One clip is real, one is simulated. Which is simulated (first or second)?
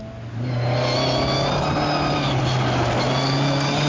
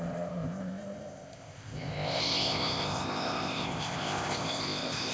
second